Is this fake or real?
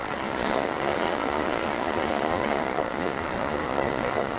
fake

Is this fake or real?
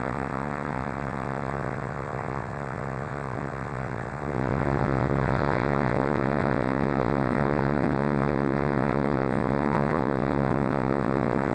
fake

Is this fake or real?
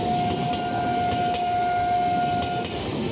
real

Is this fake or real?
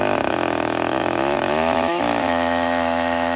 fake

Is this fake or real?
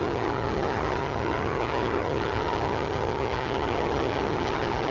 fake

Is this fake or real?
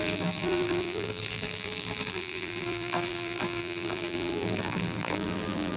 fake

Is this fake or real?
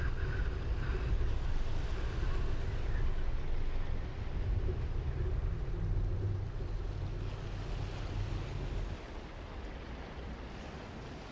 real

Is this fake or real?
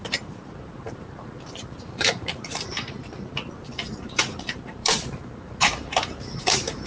fake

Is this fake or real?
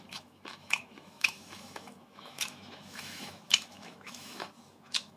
fake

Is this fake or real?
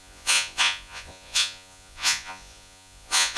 fake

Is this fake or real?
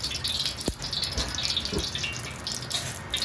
real